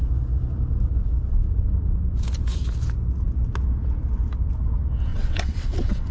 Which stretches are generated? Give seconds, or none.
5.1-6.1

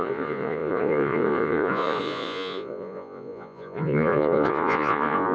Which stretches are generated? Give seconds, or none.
0.0-5.3

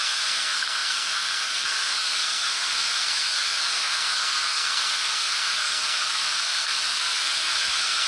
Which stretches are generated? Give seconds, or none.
0.0-8.1

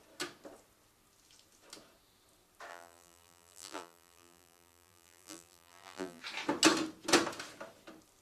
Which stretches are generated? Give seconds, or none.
2.7-6.2

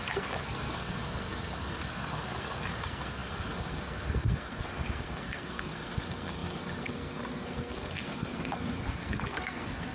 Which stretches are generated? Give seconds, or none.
0.0-9.9